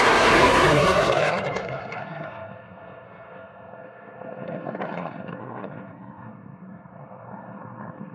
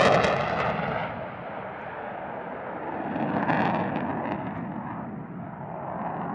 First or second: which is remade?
first